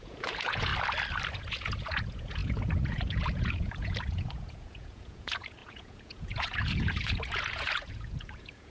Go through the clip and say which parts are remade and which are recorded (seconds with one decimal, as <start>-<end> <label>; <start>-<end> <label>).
0.0-0.7 remade; 0.7-1.3 recorded; 1.3-8.7 remade